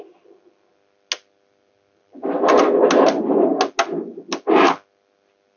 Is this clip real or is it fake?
real